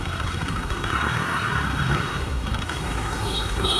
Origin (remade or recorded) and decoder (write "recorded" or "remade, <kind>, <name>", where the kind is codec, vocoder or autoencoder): remade, codec, SNAC